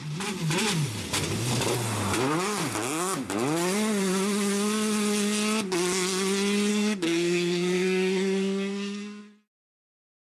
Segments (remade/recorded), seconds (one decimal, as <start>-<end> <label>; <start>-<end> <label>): 0.0-6.7 recorded; 6.7-9.2 remade; 9.2-10.3 recorded